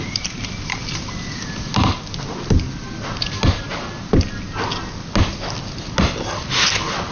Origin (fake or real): real